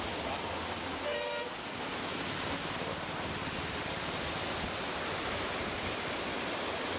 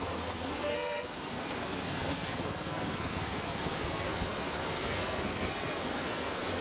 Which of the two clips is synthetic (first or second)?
second